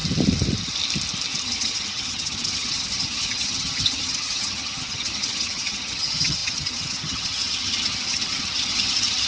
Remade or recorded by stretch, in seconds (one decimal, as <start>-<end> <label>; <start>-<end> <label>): 0.0-1.4 recorded; 1.4-9.3 remade